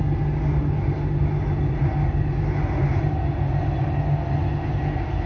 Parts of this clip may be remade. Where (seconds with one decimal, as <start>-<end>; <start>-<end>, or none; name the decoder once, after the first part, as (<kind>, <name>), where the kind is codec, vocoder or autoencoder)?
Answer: none